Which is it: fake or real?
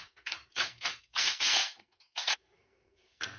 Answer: fake